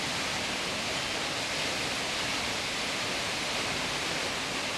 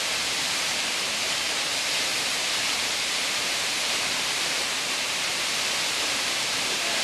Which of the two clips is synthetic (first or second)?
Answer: second